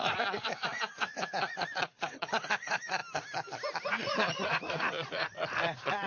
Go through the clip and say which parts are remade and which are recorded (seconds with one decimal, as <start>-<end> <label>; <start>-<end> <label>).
0.0-3.0 remade; 3.0-3.9 recorded; 3.9-6.1 remade